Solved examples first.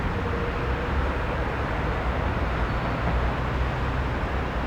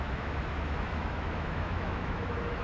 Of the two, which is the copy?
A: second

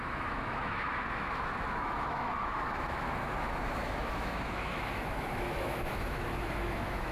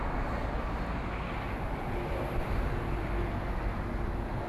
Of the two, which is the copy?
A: first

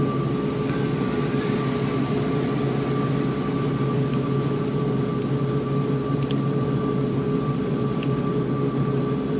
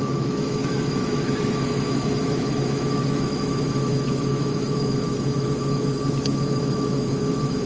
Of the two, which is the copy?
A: second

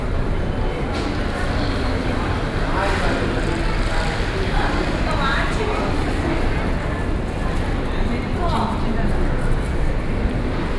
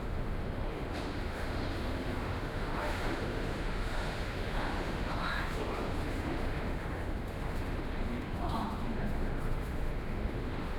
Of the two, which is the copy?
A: second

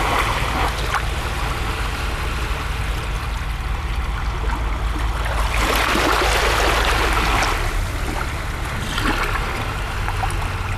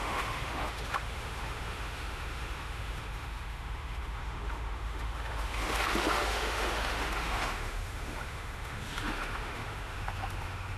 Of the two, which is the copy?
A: second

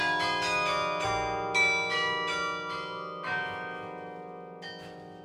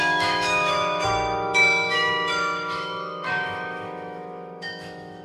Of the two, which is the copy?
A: second